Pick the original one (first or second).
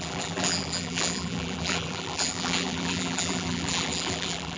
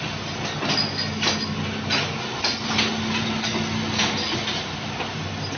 second